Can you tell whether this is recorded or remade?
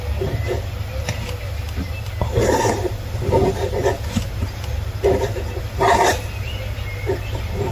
recorded